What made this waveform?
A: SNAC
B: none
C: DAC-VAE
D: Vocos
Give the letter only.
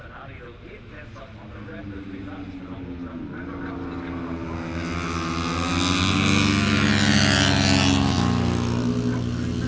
B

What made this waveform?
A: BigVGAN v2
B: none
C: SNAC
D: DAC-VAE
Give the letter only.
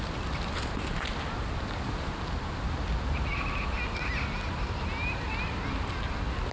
B